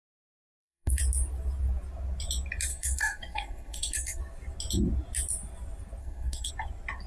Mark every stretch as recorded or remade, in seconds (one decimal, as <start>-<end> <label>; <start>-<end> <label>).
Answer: 0.0-1.0 remade; 1.0-2.7 recorded; 2.7-4.2 remade; 4.2-6.0 recorded; 6.0-6.5 remade; 6.5-7.1 recorded